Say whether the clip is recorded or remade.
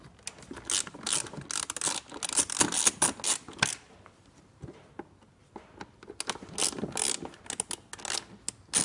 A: recorded